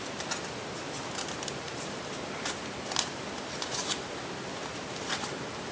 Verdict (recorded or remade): recorded